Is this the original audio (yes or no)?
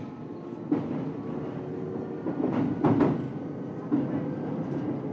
yes